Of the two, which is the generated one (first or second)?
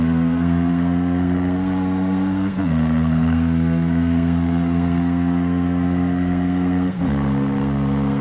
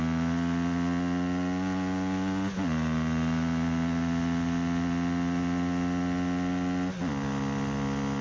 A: first